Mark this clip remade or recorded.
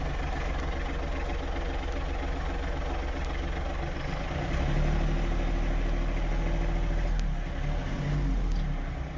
recorded